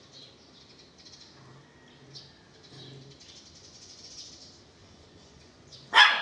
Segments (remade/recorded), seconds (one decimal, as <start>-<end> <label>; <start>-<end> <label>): 0.0-3.6 recorded; 3.6-4.3 remade; 4.3-4.8 recorded; 4.8-6.2 remade